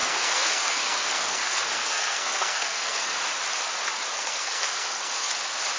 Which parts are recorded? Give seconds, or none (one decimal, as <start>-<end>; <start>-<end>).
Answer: 3.1-4.1; 5.3-5.8